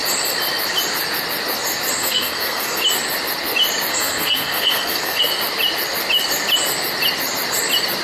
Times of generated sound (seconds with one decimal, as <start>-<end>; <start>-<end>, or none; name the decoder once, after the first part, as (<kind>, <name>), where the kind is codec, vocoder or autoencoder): 2.0-2.8 (codec, SNAC); 3.9-5.2